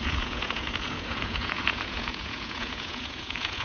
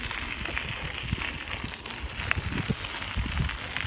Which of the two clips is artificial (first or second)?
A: first